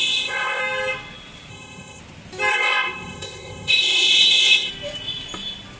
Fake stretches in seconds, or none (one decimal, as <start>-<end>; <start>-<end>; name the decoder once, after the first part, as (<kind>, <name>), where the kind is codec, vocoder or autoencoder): 0.0-0.6 (codec, ZipCodec); 1.5-2.0; 2.5-4.7

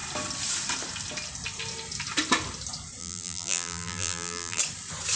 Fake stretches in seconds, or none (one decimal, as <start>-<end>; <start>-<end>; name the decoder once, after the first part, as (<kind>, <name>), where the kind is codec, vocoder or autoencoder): 3.0-4.6 (vocoder, BigVGAN v2)

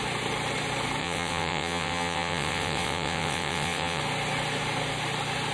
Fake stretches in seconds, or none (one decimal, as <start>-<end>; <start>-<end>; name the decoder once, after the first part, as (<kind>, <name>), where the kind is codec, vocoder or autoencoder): 1.0-4.0 (vocoder, WaveNeXt)